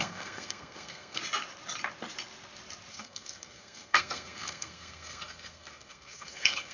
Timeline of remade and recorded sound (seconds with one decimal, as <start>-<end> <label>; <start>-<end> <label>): 0.0-1.2 remade; 1.2-2.9 recorded; 2.9-6.7 remade